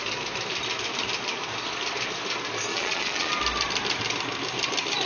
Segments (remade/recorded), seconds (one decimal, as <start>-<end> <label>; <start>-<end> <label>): 0.0-2.7 recorded; 2.7-3.3 remade; 3.3-5.1 recorded